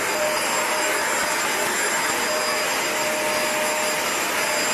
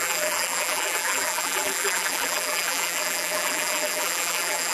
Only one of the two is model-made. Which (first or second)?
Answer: second